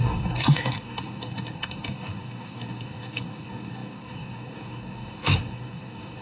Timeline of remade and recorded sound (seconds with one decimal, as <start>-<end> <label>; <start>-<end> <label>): 0.0-6.2 remade